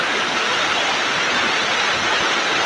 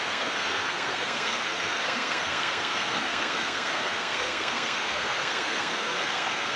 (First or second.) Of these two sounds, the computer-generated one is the second